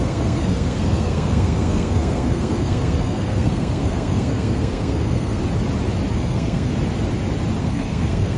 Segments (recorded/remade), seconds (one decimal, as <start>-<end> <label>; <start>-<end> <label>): 0.0-5.4 remade; 5.4-6.1 recorded; 6.1-6.7 remade; 6.7-7.6 recorded; 7.6-8.4 remade